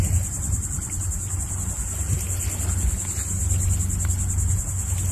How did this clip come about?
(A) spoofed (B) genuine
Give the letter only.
B